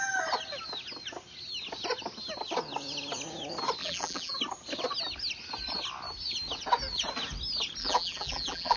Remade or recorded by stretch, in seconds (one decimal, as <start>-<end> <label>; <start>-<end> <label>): 0.0-3.8 recorded; 3.8-4.3 remade; 4.3-7.8 recorded; 7.8-8.8 remade